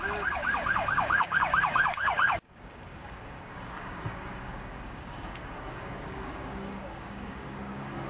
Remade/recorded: remade